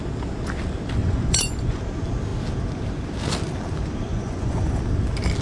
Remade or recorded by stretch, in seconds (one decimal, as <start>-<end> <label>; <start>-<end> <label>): 0.0-1.0 recorded; 1.0-1.8 remade; 1.8-4.1 recorded; 4.1-4.8 remade; 4.8-5.4 recorded